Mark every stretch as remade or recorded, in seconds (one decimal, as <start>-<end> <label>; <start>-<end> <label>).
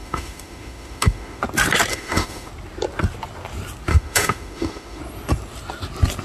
0.0-1.4 remade; 1.4-1.9 recorded; 1.9-2.5 remade; 2.5-3.9 recorded; 3.9-5.0 remade; 5.0-6.2 recorded